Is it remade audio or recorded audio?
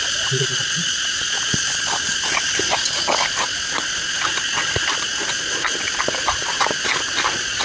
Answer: recorded